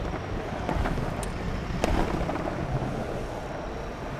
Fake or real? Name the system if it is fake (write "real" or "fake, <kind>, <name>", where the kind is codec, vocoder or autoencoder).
real